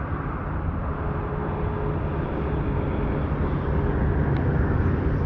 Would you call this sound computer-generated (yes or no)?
no